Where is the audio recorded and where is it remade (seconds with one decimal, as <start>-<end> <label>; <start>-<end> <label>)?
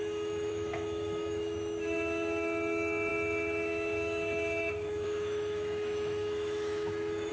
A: 0.0-7.3 remade